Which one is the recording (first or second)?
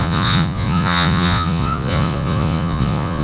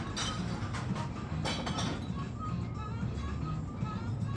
second